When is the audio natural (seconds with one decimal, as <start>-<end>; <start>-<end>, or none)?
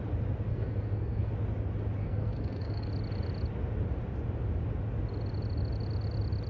0.0-0.5; 1.3-2.0; 2.9-6.5